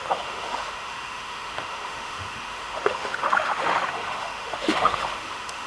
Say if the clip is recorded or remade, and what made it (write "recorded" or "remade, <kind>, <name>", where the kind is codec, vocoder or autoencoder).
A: remade, autoencoder, DAC-VAE